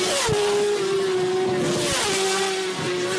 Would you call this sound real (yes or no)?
yes